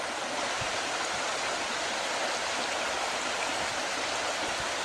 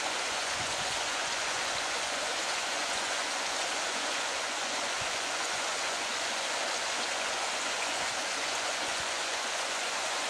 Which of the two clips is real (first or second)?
first